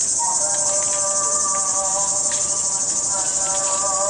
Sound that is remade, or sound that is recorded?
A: recorded